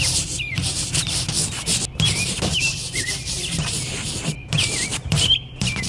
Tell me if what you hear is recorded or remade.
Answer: recorded